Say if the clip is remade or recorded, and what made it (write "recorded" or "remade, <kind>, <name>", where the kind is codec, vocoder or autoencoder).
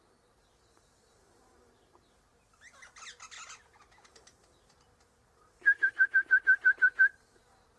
recorded